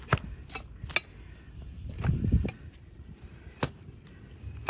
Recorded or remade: recorded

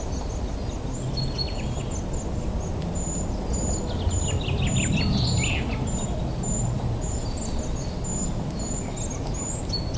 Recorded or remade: recorded